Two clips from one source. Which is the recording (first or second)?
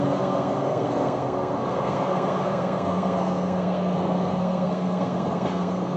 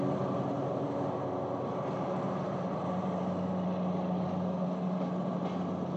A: second